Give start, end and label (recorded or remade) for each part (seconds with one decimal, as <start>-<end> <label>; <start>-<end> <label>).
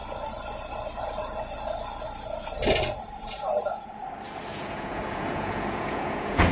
0.0-3.2 recorded; 3.2-4.0 remade; 4.0-4.5 recorded; 4.5-6.5 remade